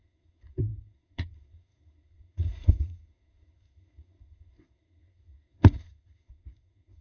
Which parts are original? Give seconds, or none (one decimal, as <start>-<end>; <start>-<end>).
none